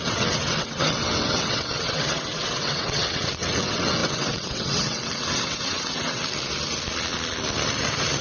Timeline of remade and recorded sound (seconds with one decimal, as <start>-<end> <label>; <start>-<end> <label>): 0.0-6.2 remade; 6.2-8.2 recorded